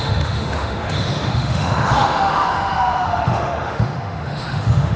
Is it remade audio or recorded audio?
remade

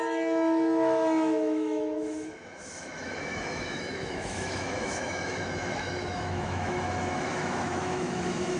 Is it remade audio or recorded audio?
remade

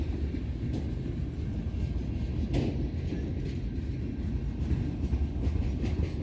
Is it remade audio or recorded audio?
recorded